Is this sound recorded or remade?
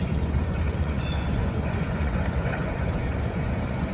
remade